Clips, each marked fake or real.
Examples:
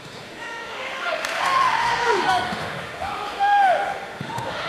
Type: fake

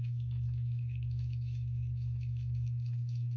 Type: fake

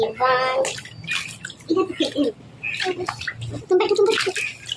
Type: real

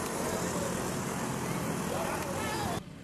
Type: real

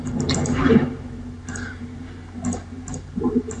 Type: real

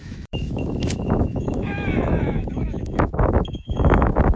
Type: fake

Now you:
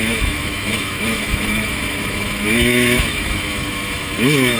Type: fake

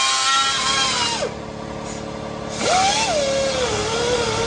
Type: real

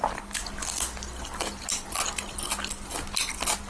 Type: real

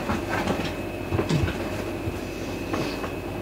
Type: real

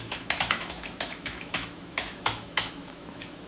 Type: fake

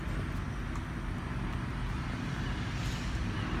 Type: real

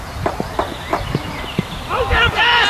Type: real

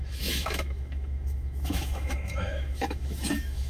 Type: fake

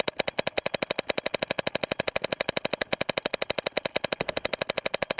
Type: real